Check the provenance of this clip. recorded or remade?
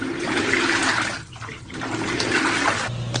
remade